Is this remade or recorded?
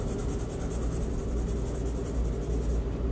recorded